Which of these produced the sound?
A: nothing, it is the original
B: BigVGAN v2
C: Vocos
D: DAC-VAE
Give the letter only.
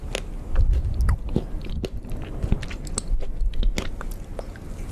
A